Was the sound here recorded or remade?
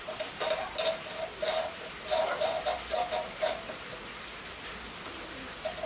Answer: recorded